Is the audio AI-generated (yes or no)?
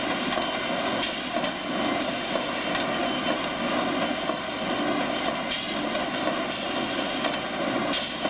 no